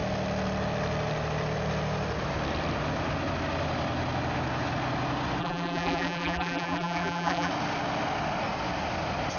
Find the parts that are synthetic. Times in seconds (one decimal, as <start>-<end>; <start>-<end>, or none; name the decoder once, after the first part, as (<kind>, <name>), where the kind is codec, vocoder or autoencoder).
5.4-7.5 (vocoder, BigVGAN v2)